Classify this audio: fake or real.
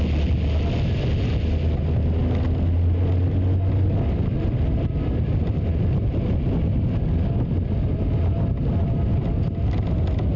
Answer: real